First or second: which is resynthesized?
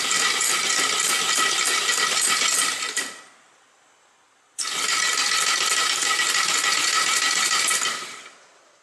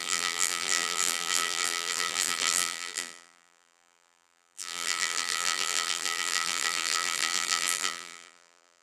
second